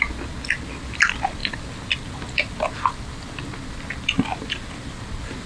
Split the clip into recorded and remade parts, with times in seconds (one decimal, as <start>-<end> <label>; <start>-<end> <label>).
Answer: 0.0-5.5 recorded